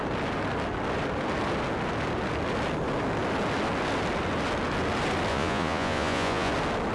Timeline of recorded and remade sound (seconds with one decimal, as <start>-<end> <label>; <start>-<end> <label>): 0.0-5.3 recorded; 5.3-6.5 remade; 6.5-6.9 recorded